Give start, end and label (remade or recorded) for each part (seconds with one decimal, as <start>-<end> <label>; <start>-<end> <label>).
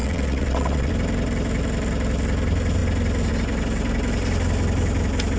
0.0-0.9 remade; 0.9-5.4 recorded